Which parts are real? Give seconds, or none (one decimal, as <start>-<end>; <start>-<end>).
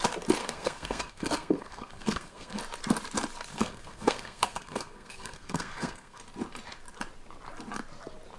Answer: 0.0-0.4; 2.6-3.5; 6.2-8.4